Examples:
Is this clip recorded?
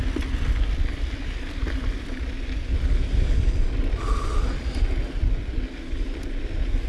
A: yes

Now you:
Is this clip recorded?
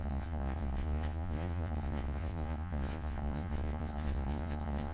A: no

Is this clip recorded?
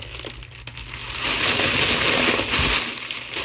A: yes